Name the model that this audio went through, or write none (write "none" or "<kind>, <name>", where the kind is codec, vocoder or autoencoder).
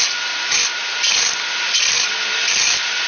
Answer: none